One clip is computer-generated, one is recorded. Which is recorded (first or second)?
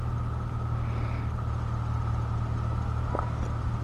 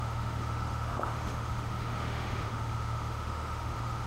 first